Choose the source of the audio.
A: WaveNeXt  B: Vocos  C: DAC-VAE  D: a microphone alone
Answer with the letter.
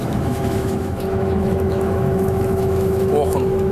C